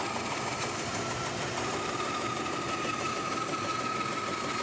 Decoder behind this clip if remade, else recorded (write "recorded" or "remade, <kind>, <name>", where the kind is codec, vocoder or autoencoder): recorded